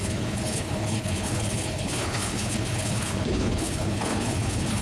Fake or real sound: fake